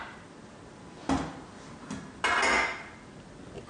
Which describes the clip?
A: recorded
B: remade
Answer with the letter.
A